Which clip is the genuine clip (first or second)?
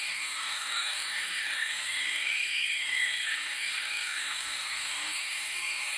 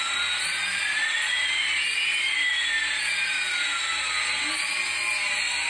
second